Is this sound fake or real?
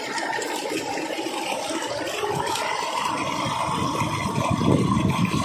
fake